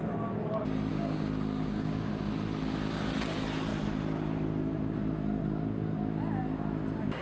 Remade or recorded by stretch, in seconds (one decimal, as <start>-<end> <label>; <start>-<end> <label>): 0.0-0.9 recorded; 0.9-2.1 remade; 2.1-7.2 recorded